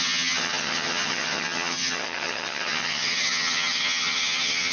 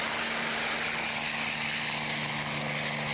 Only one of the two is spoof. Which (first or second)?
first